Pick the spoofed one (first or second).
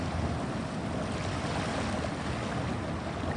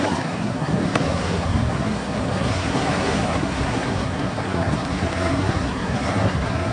second